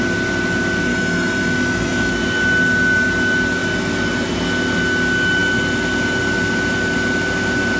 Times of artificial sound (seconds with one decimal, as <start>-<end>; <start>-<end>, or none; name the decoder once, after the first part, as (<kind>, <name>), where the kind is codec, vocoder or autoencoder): 0.9-2.1 (autoencoder, DAC-VAE)